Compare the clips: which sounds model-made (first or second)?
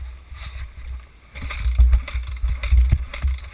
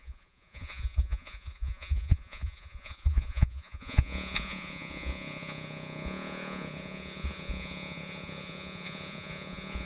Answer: second